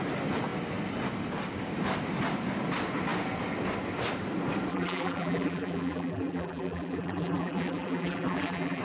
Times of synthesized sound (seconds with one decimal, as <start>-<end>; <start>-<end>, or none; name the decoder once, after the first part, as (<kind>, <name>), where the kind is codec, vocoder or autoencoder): 4.7-8.8 (vocoder, BigVGAN v2)